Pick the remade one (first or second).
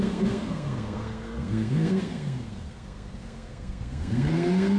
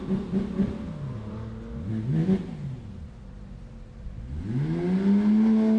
first